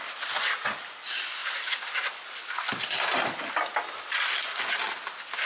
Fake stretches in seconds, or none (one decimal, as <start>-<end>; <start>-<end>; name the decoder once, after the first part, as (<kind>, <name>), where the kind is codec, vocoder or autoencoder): none